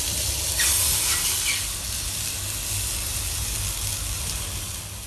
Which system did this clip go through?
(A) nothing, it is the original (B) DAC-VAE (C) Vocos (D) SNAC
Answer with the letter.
A